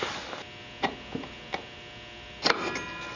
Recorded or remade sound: recorded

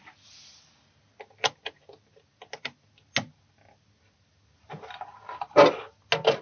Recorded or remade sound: recorded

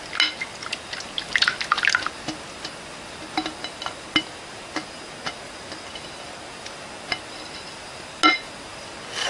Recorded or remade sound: recorded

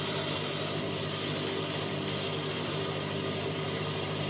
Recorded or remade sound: recorded